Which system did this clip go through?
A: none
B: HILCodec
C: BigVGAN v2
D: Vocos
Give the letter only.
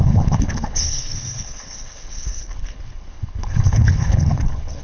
B